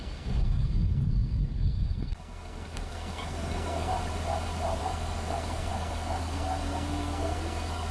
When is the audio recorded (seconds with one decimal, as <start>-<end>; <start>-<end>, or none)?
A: 3.9-4.8